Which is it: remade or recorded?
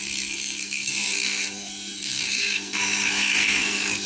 remade